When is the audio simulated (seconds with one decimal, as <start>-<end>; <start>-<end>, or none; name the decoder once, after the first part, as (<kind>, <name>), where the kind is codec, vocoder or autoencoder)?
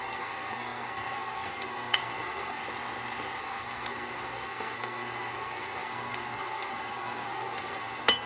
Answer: 0.0-2.6 (codec, SNAC); 3.4-8.3